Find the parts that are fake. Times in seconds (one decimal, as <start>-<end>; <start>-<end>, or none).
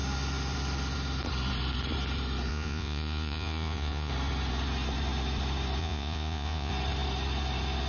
2.5-4.1; 5.8-6.7